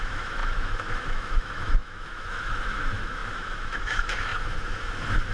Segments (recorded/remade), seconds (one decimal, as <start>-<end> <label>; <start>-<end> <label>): 0.0-5.3 remade